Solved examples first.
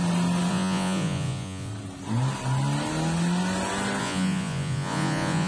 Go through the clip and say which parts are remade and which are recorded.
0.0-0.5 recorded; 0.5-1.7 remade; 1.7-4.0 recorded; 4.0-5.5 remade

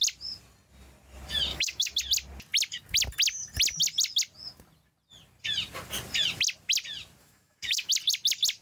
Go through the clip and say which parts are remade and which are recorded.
0.0-1.5 recorded; 1.5-2.0 remade; 2.0-7.2 recorded; 7.2-7.9 remade; 7.9-8.6 recorded

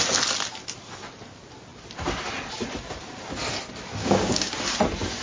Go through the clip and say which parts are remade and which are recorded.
0.0-4.0 recorded; 4.0-4.5 remade; 4.5-5.2 recorded

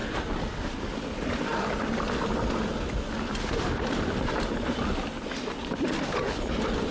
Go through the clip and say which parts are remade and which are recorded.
0.0-6.9 recorded

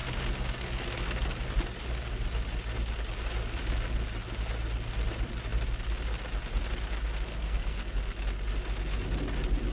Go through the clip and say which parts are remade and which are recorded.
0.0-7.3 recorded; 7.3-7.9 remade; 7.9-9.7 recorded

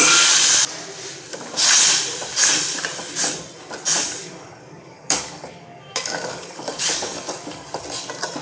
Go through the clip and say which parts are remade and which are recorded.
0.0-4.2 recorded; 4.2-7.8 remade; 7.8-8.4 recorded

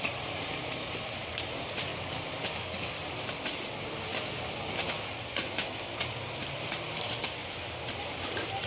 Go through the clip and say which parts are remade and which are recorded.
0.0-1.9 remade; 1.9-2.9 recorded; 2.9-4.1 remade; 4.1-6.7 recorded; 6.7-7.4 remade; 7.4-7.9 recorded; 7.9-8.7 remade